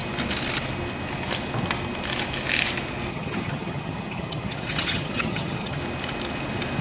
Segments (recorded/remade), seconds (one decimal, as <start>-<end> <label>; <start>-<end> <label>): 0.0-3.1 recorded; 3.1-5.8 remade; 5.8-6.8 recorded